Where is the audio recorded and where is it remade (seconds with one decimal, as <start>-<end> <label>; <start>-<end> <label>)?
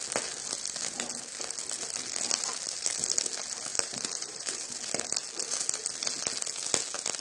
0.0-3.7 recorded; 3.7-4.7 remade; 4.7-7.2 recorded